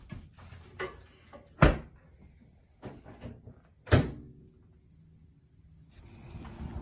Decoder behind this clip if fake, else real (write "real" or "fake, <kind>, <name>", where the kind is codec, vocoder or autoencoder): real